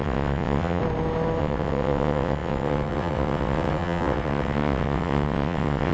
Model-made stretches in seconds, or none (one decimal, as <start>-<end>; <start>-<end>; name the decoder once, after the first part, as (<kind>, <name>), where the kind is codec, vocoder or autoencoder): 0.0-0.8 (vocoder, WaveNeXt); 1.4-5.9